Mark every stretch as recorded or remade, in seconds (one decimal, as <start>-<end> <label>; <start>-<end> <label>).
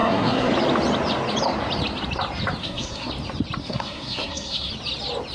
0.0-0.5 remade; 0.5-2.6 recorded; 2.6-3.1 remade; 3.1-3.6 recorded; 3.6-4.7 remade; 4.7-5.3 recorded